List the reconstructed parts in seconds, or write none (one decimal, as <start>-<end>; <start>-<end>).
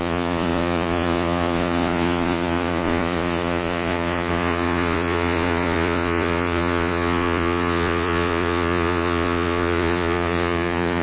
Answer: 0.0-11.0